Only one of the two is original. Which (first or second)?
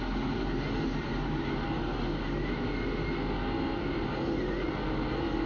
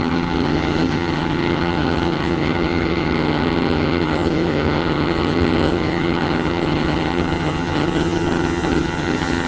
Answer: first